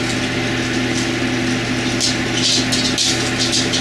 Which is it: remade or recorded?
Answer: recorded